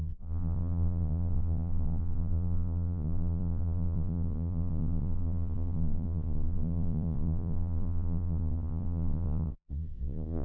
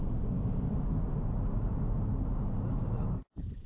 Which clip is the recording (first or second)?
second